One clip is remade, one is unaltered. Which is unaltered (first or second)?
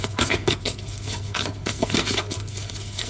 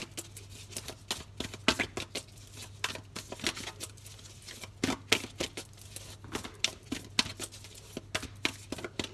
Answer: second